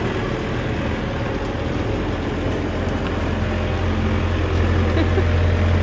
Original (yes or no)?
yes